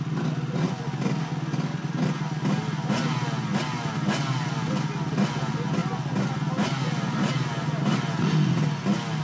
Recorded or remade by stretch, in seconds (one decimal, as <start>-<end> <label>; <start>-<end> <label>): 0.0-9.2 recorded